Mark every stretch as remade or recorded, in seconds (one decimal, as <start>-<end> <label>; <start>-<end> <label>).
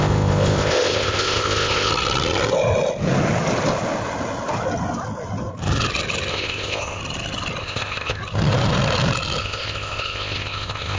0.0-1.9 remade; 1.9-6.3 recorded; 6.3-7.0 remade; 7.0-7.6 recorded; 7.6-8.2 remade; 8.2-9.4 recorded; 9.4-11.0 remade